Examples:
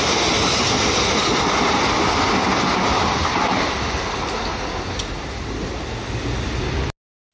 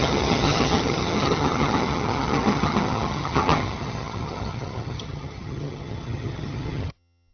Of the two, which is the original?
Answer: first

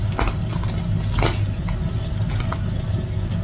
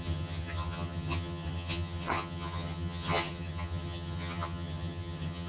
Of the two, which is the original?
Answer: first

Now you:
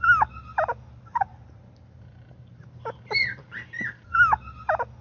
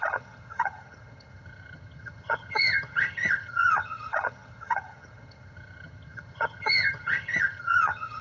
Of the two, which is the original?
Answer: first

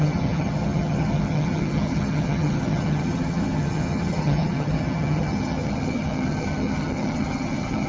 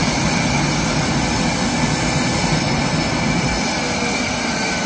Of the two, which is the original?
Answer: second